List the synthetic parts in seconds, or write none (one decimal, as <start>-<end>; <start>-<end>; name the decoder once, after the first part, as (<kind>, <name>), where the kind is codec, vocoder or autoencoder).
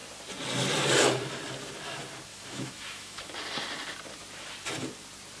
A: 2.3-3.3 (autoencoder, DAC-VAE)